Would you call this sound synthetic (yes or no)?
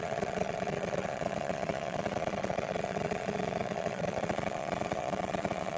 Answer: yes